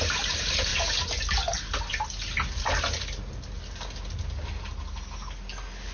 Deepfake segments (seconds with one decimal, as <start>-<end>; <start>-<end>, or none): none